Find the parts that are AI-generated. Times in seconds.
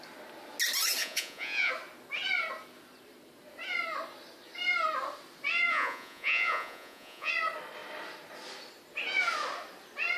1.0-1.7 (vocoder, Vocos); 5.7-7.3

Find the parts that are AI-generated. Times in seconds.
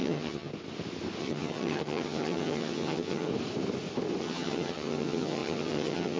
0.0-0.5 (vocoder, HiFi-GAN); 1.2-3.3; 4.2-6.2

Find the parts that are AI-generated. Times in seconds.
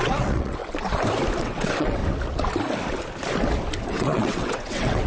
0.0-0.6 (vocoder, WaveNeXt); 1.4-2.0; 3.8-5.1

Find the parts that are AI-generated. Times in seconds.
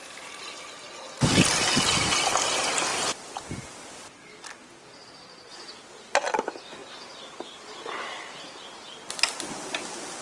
none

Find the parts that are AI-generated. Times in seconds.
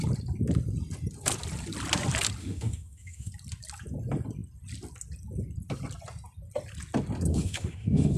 2.4-3.3 (autoencoder, DAC-VAE); 7.3-8.2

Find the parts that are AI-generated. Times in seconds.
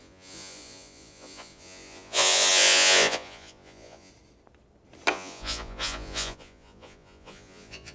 0.0-4.1 (vocoder, Vocos); 5.1-7.9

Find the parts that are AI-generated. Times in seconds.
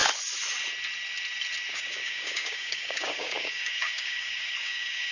1.7-5.1 (codec, DAC)